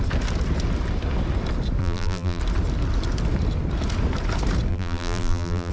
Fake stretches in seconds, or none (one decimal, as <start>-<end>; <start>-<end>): 1.8-2.4; 4.7-5.7